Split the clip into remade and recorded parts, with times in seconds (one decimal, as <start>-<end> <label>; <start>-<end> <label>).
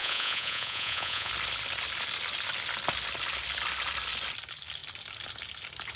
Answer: 0.0-1.3 remade; 1.3-6.0 recorded